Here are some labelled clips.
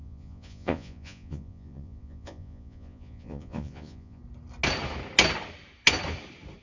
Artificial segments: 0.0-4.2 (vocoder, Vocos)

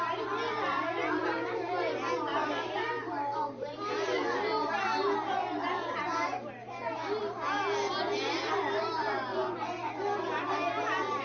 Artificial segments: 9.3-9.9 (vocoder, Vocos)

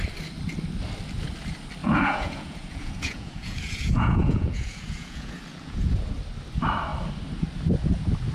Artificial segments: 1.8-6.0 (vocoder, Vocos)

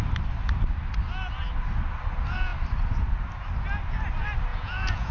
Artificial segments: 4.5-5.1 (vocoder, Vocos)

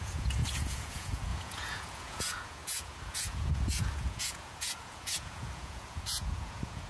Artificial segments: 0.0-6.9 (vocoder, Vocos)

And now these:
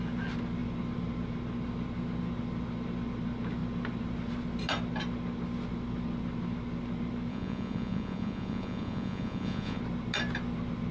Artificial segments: 7.3-9.8 (vocoder, Vocos)